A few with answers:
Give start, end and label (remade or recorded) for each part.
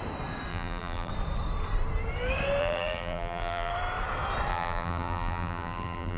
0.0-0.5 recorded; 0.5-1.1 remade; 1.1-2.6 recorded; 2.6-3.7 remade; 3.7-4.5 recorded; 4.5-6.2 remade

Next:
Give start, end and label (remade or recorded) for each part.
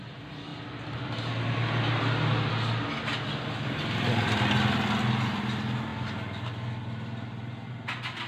0.0-8.3 recorded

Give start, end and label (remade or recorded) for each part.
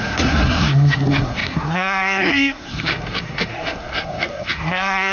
0.0-5.1 remade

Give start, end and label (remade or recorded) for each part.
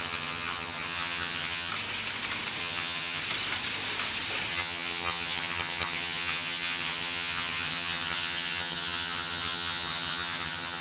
0.0-1.7 remade; 1.7-2.6 recorded; 2.6-3.2 remade; 3.2-4.5 recorded; 4.5-10.8 remade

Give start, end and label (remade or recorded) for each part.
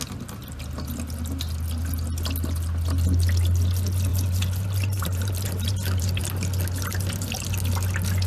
0.0-4.1 recorded; 4.1-6.2 remade; 6.2-8.3 recorded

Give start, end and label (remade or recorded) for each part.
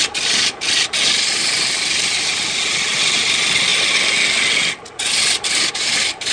0.0-6.3 recorded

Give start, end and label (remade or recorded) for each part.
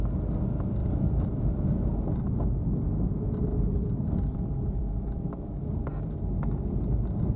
0.0-0.8 recorded; 0.8-1.7 remade; 1.7-3.5 recorded; 3.5-6.1 remade; 6.1-7.4 recorded